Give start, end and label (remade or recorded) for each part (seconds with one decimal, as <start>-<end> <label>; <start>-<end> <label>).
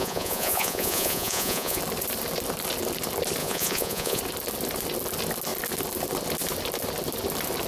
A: 0.0-1.8 remade; 1.8-3.4 recorded; 3.4-4.2 remade; 4.2-7.7 recorded